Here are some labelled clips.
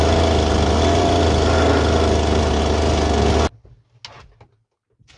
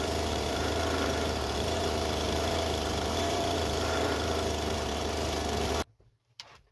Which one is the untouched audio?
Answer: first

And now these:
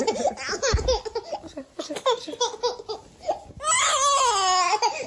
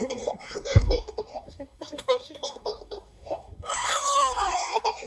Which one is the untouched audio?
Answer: first